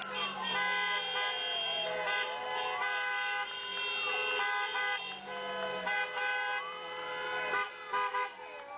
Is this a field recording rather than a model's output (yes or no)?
yes